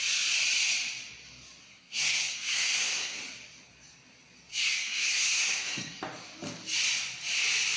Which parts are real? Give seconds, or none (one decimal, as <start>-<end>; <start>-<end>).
0.0-1.6; 3.2-4.5; 6.0-7.8